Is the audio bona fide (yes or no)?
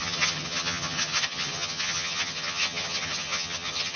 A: no